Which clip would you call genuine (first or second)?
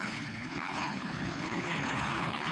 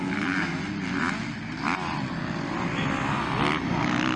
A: second